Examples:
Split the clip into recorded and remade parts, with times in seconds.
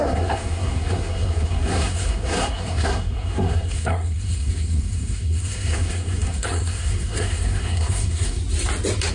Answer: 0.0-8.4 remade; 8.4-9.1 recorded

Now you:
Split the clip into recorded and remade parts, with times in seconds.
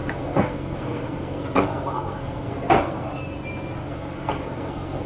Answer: 0.0-3.1 remade; 3.1-3.8 recorded; 3.8-5.1 remade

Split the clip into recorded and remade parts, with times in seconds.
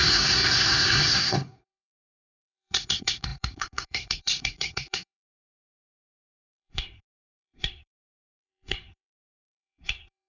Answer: 0.0-10.3 remade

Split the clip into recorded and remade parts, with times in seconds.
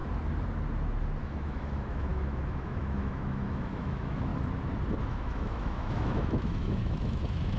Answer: 0.0-1.2 recorded; 1.2-4.3 remade; 4.3-5.0 recorded; 5.0-7.6 remade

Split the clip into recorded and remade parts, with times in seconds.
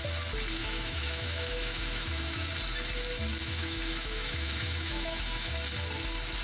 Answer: 0.0-0.6 recorded; 0.6-2.5 remade; 2.5-3.4 recorded; 3.4-5.5 remade; 5.5-6.4 recorded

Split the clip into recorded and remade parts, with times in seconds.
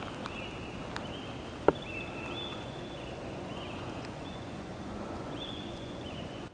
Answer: 0.0-2.5 recorded; 2.5-6.5 remade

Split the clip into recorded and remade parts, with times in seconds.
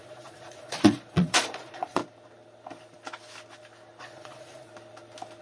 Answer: 0.0-2.0 remade; 2.0-4.0 recorded; 4.0-4.7 remade; 4.7-5.4 recorded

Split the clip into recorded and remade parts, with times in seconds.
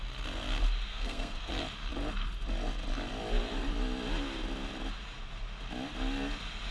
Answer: 0.0-0.9 recorded; 0.9-1.5 remade; 1.5-6.7 recorded